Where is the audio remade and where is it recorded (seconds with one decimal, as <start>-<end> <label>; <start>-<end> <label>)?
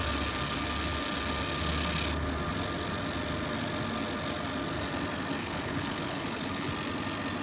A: 0.0-5.4 recorded; 5.4-6.7 remade; 6.7-7.4 recorded